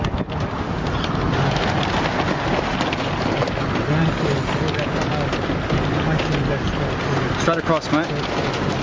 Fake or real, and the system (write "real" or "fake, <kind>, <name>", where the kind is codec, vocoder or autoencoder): real